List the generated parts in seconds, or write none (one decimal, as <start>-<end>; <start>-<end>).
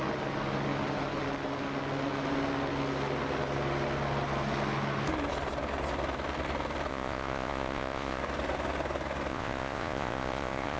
6.9-8.2; 9.3-10.8